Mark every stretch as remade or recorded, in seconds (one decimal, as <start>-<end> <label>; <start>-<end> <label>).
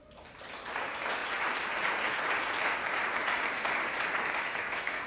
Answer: 0.0-4.6 recorded; 4.6-5.1 remade